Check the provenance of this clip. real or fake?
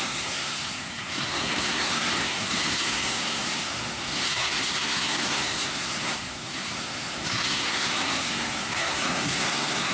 fake